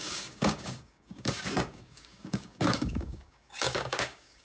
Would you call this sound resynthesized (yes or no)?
yes